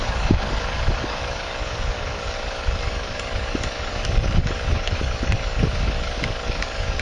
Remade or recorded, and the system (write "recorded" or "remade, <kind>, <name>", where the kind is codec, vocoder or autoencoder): remade, codec, DAC